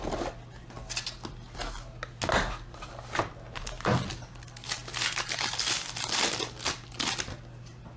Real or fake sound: real